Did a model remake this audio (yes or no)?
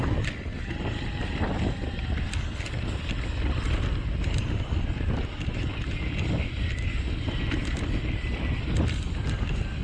no